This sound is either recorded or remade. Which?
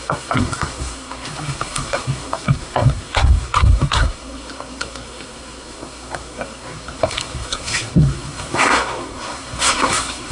remade